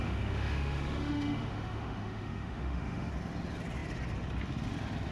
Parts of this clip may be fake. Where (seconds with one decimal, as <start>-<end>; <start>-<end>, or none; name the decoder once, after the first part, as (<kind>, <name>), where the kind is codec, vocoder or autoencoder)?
0.0-3.1 (autoencoder, DAC-VAE)